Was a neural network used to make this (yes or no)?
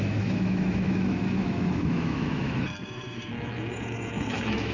yes